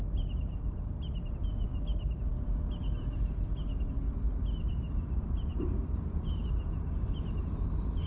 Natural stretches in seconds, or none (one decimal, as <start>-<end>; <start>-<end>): 0.0-8.1